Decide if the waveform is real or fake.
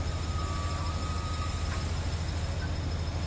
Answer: real